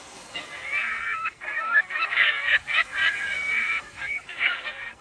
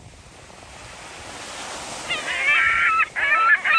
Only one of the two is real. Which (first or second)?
second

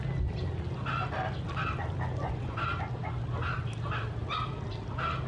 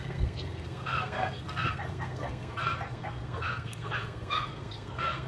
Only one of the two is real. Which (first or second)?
first